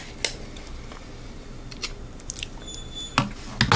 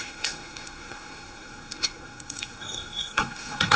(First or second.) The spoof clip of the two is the second